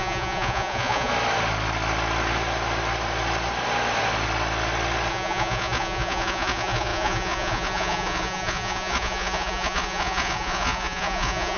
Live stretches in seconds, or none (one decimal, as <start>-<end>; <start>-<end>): 1.1-5.1